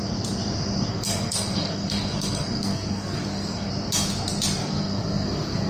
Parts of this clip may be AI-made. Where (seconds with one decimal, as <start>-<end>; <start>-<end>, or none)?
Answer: 0.9-3.7; 4.6-5.7